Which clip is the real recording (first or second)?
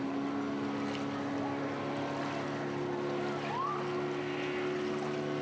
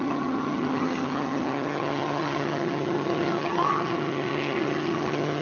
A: first